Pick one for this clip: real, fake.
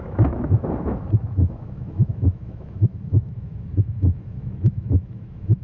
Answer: fake